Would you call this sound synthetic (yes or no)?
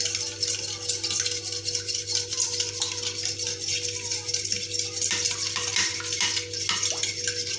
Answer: no